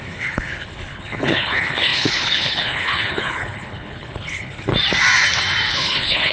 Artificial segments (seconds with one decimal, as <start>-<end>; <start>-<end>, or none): 0.0-4.7; 5.7-6.3